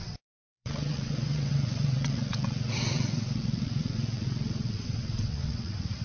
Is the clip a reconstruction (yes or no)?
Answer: yes